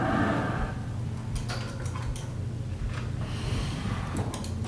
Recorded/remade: recorded